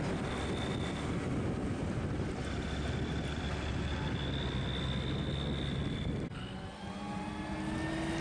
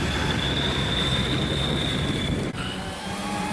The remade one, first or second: second